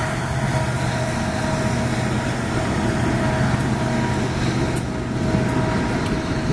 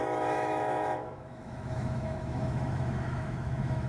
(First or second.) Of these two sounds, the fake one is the second